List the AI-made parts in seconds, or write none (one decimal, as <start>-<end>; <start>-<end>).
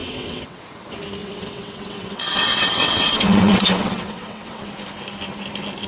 0.0-0.6; 1.2-4.6